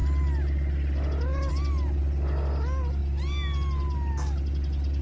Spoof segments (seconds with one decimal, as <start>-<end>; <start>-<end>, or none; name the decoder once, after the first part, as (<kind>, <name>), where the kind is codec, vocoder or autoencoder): none